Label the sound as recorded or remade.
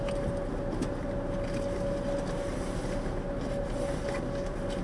recorded